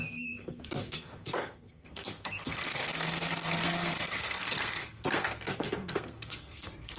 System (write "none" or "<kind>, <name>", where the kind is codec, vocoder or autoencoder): codec, SNAC